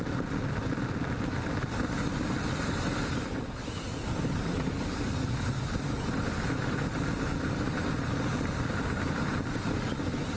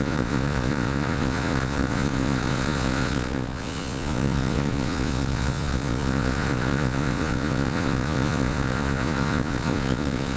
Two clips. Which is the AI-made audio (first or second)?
second